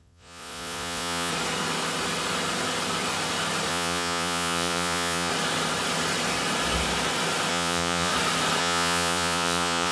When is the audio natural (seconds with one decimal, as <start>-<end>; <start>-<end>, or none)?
1.3-3.7; 5.3-7.5; 8.1-8.6